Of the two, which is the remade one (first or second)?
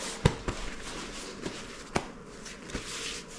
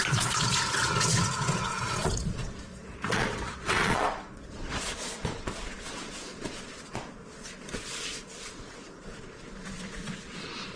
second